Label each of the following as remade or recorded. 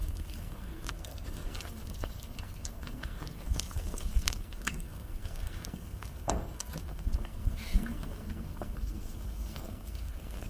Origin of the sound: remade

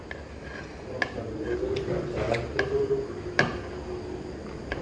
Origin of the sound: recorded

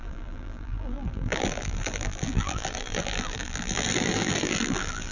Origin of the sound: remade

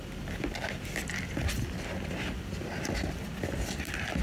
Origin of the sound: recorded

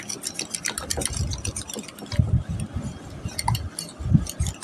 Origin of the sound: recorded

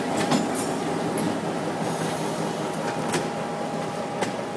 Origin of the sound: recorded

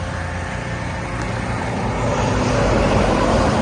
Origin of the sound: recorded